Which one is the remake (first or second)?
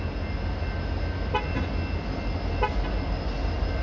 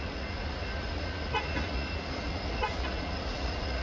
second